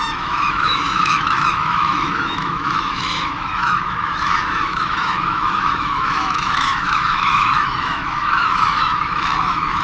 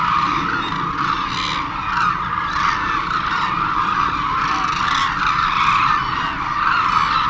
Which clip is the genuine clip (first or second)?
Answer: second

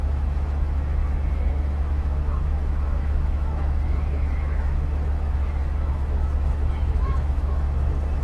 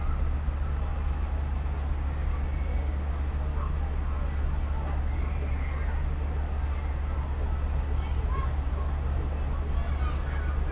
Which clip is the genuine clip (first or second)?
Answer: second